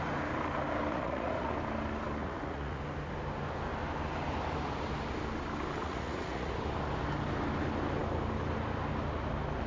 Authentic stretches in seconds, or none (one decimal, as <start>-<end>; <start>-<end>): 0.0-0.9; 1.5-2.2; 2.8-5.8; 6.5-9.7